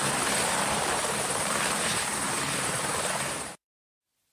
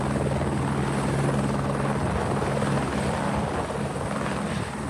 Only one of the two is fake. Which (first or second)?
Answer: first